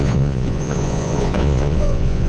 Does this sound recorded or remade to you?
remade